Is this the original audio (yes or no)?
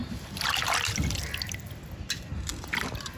yes